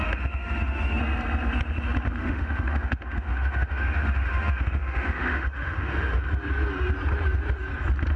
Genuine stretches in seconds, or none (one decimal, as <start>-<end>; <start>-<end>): 1.0-2.2; 6.2-8.2